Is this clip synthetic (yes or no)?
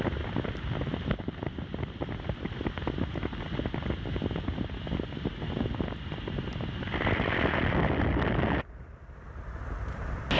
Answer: no